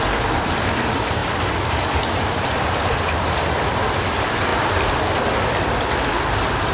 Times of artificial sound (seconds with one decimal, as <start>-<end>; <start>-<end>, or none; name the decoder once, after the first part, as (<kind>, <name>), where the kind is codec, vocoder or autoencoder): 0.0-1.2 (vocoder, BigVGAN v2); 2.0-6.7